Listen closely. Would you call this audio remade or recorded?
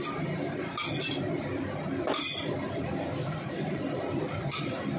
remade